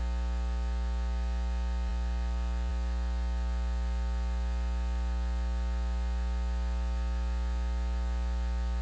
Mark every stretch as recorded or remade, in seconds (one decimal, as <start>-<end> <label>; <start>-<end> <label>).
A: 0.0-8.8 recorded